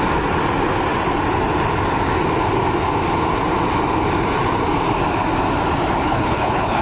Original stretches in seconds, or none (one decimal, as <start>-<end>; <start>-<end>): 0.0-6.0

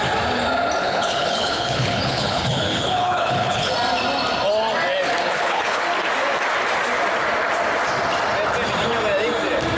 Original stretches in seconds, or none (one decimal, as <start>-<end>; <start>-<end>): 0.0-0.8; 3.7-5.3; 5.8-9.8